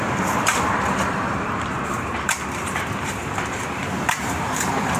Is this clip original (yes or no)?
no